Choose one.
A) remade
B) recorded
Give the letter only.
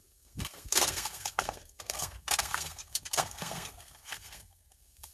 A